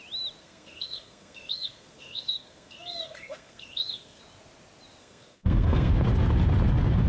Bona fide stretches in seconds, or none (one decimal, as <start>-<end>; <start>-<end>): 0.0-0.4; 4.2-5.0; 5.9-7.1